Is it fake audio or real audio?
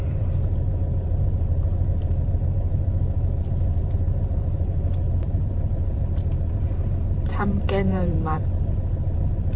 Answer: fake